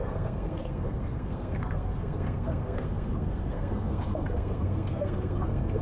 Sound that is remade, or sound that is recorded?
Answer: remade